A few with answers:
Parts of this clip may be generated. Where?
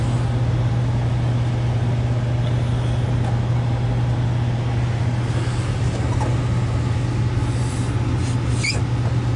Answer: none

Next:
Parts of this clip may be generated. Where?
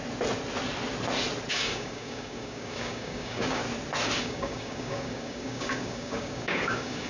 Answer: 1.5-3.6; 4.2-7.1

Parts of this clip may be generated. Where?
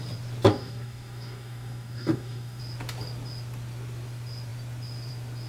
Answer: 0.5-2.6